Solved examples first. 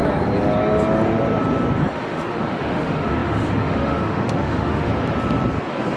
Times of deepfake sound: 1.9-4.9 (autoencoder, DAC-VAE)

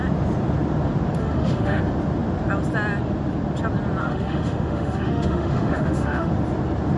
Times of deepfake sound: 1.2-1.8 (autoencoder, DAC-VAE); 4.0-6.3